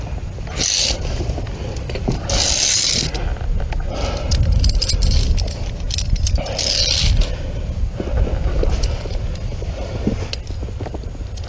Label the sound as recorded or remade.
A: recorded